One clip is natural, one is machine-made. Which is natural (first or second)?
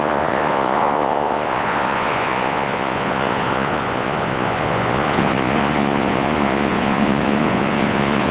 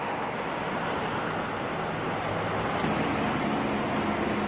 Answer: second